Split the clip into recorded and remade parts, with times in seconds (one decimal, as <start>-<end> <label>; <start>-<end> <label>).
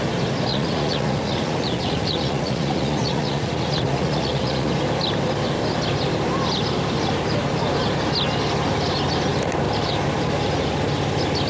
0.0-0.5 recorded; 0.5-4.7 remade; 4.7-11.5 recorded